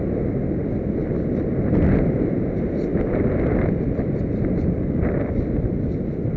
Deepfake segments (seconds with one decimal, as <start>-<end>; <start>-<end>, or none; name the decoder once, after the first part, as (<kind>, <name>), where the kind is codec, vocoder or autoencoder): 1.0-2.1 (vocoder, BigVGAN v2); 2.9-5.4